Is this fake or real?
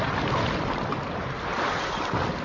real